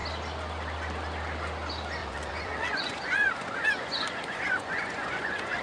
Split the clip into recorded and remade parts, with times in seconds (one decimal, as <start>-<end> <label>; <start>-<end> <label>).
0.0-2.0 recorded; 2.0-5.6 remade